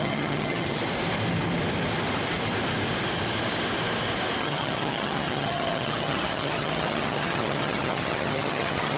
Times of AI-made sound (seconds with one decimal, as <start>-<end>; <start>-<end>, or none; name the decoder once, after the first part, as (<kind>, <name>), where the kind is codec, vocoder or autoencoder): 0.0-0.8 (vocoder, HiFi-GAN); 4.4-9.0